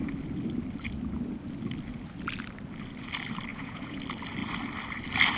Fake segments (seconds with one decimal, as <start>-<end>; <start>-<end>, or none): 3.5-4.0